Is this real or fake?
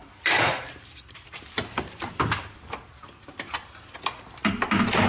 real